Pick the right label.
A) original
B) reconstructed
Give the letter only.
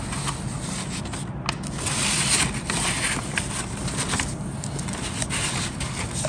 A